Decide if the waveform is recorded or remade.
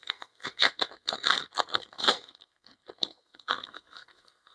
remade